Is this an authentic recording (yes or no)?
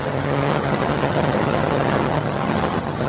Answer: no